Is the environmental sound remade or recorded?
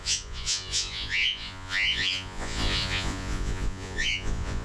remade